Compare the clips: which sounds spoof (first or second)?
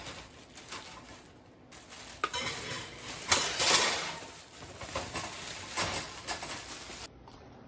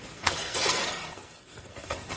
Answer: second